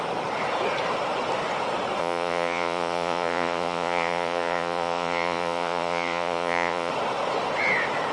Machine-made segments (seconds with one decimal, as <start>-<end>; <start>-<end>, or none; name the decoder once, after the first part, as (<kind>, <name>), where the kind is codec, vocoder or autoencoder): 2.0-6.9 (vocoder, Vocos)